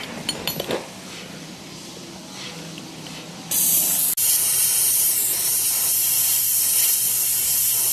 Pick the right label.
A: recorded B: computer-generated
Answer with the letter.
A